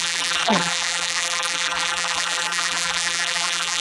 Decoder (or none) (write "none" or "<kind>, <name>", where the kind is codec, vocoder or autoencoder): vocoder, BigVGAN v2